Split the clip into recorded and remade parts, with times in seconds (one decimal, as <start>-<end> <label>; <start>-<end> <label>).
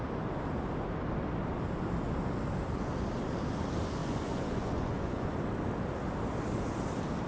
0.0-4.0 recorded; 4.0-5.3 remade; 5.3-7.3 recorded